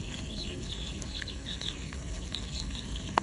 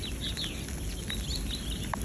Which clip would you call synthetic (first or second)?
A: first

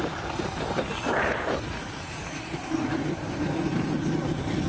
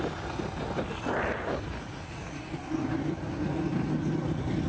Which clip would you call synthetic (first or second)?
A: first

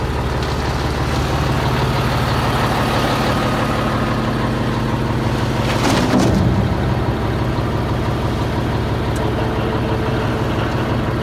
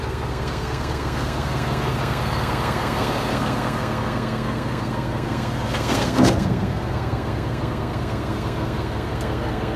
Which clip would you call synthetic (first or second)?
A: second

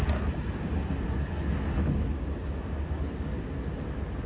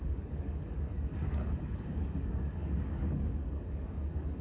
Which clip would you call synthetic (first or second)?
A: second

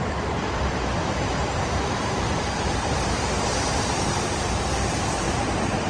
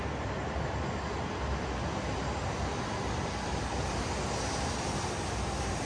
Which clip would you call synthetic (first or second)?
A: first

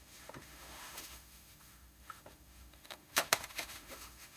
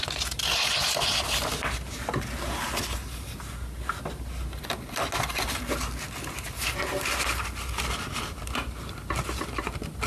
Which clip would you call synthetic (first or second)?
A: first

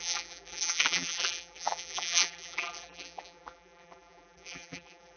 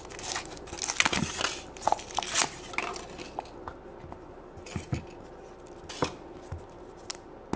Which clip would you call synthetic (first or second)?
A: first